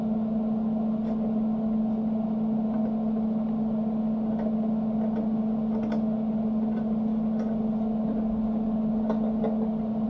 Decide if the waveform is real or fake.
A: real